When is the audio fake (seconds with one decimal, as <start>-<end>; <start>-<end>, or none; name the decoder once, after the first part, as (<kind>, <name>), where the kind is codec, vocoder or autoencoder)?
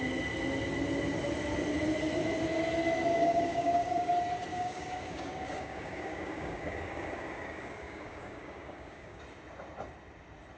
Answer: 3.1-4.1 (codec, DAC); 4.5-9.2